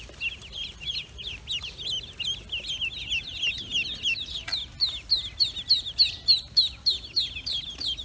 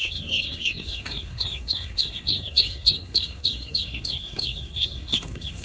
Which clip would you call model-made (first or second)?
second